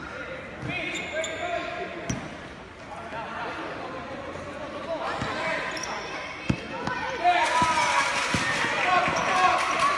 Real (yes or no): yes